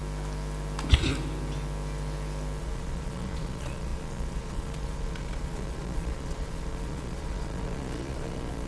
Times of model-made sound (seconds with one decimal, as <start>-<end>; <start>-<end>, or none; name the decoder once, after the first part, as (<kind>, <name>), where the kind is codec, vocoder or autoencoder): 2.6-8.7 (vocoder, Vocos)

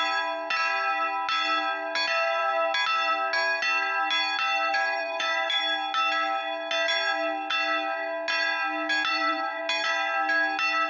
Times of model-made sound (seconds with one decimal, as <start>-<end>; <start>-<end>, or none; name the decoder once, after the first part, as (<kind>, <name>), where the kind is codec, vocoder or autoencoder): 4.7-5.6 (vocoder, BigVGAN v2); 9.1-9.6

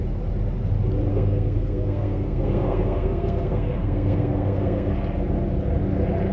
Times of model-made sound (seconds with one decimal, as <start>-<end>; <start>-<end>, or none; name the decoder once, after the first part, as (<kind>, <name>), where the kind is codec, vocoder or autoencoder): 1.1-4.9 (codec, SNAC)

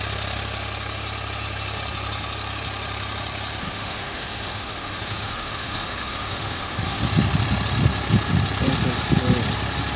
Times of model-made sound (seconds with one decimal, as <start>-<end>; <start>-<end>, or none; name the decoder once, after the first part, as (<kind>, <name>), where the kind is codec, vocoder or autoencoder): 3.6-7.0 (autoencoder, DAC-VAE)

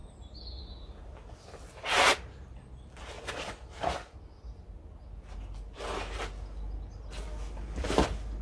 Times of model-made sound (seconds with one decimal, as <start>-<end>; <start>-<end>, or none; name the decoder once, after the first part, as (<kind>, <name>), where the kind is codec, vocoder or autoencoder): none

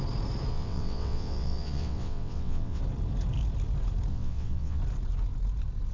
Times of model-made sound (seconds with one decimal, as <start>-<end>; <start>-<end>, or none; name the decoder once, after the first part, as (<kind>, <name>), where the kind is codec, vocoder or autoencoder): 0.5-2.8 (vocoder, WaveNeXt); 4.1-4.8

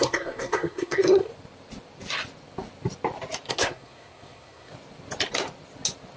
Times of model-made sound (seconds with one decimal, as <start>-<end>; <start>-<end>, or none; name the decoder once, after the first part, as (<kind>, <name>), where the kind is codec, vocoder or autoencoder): 0.0-1.3 (codec, SNAC); 3.5-4.7